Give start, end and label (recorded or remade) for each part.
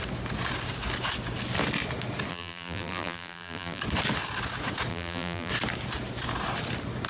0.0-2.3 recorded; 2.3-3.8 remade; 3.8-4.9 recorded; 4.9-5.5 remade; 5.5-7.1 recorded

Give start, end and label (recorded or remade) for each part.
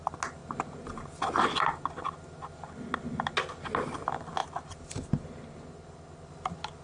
0.0-6.8 recorded